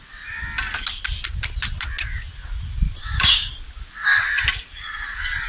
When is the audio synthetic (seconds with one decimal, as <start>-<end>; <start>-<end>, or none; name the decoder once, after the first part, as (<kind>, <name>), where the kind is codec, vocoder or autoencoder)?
3.0-3.5 (codec, DAC)